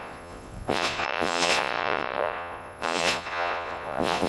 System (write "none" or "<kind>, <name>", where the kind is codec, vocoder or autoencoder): vocoder, Vocos